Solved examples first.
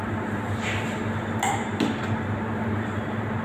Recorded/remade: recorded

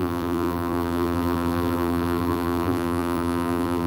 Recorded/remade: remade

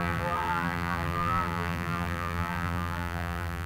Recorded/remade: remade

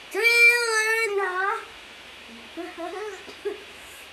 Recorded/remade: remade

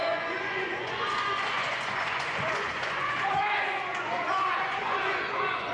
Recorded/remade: remade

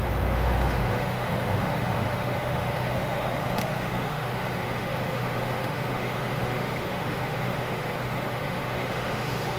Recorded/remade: remade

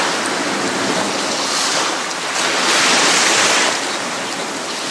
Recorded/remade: recorded